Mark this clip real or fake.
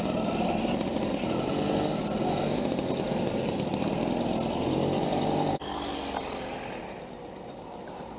real